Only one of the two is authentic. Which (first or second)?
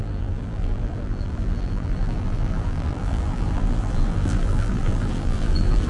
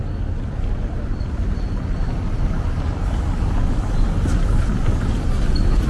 second